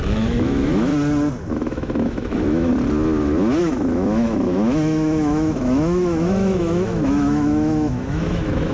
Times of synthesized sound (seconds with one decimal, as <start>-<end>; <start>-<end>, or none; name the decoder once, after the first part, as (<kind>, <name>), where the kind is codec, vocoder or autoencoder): 0.0-0.9 (autoencoder, DAC-VAE); 1.5-2.7; 3.6-8.7